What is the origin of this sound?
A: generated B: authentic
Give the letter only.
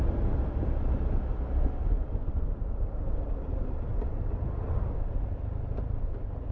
B